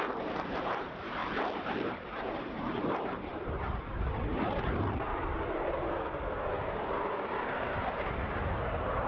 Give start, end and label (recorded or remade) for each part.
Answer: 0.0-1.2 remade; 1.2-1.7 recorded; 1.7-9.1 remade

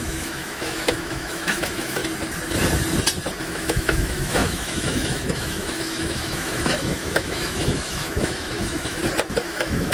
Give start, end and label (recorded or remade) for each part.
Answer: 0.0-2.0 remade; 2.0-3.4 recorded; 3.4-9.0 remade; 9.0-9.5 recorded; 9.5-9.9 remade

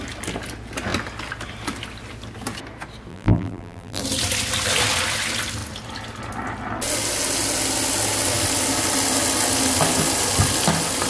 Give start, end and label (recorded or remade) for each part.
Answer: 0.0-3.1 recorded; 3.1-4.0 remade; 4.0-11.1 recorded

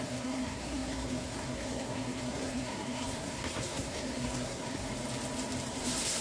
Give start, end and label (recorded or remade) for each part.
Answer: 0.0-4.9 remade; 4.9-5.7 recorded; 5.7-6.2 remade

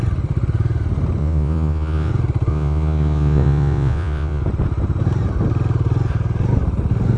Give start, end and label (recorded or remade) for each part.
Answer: 0.0-1.2 recorded; 1.2-2.1 remade; 2.1-2.5 recorded; 2.5-4.4 remade; 4.4-7.2 recorded